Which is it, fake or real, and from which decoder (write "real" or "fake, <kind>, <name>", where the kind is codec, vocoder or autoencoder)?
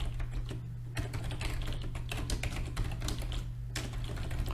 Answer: real